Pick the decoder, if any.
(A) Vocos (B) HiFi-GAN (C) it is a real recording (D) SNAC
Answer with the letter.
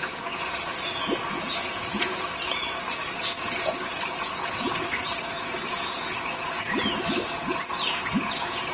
A